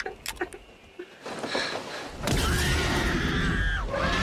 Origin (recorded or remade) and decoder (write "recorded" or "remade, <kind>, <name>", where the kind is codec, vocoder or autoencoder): recorded